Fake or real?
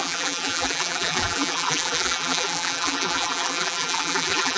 fake